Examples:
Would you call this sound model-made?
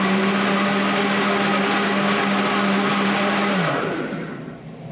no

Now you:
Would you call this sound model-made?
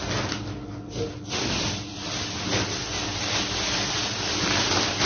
no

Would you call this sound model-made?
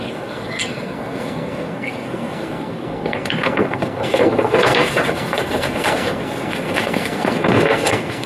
yes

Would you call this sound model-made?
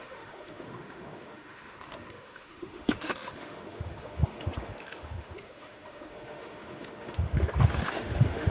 yes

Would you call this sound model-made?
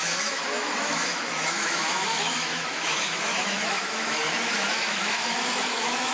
yes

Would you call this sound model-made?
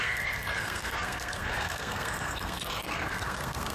yes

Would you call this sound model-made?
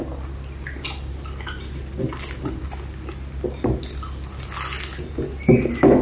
no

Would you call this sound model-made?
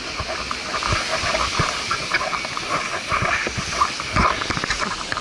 no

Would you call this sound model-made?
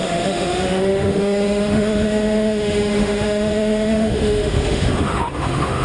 yes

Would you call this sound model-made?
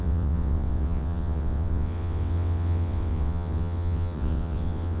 yes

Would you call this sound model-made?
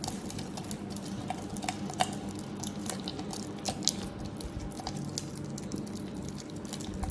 no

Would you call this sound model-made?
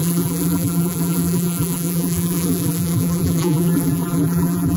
yes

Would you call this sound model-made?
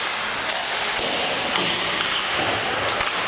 no